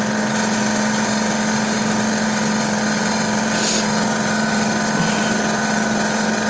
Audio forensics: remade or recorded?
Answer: recorded